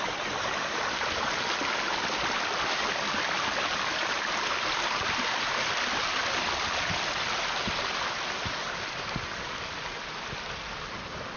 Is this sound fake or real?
real